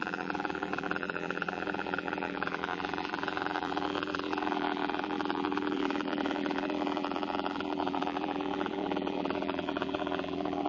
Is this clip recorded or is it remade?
remade